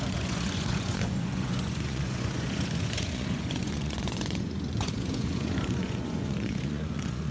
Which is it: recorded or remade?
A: remade